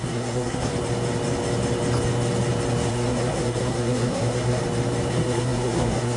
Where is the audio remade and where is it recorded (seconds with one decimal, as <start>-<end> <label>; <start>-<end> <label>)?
0.0-0.7 remade; 0.7-2.9 recorded; 2.9-4.6 remade; 4.6-5.1 recorded; 5.1-6.2 remade